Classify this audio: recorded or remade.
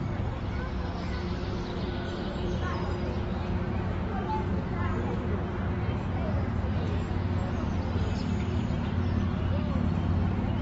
recorded